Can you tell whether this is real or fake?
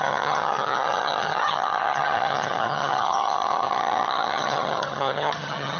fake